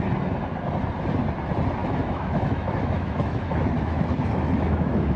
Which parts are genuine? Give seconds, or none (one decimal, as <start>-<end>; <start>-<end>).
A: 0.0-1.8